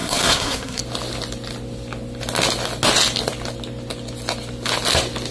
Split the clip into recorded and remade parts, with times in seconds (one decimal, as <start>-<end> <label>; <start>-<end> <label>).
0.0-0.8 remade; 0.8-5.3 recorded